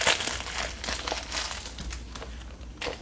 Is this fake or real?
real